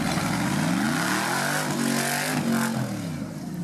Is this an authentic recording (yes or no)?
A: yes